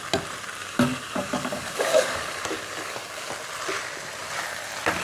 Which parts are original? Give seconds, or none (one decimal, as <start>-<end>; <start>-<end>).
0.0-0.6; 3.3-5.0